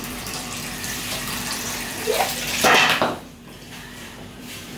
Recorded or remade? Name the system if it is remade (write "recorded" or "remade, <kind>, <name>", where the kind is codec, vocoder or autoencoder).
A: remade, vocoder, BigVGAN v2